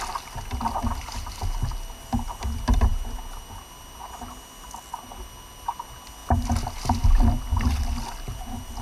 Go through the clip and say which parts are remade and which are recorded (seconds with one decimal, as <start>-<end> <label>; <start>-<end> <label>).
0.0-8.8 recorded